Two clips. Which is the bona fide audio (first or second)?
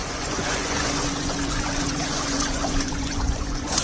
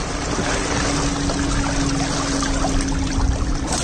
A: second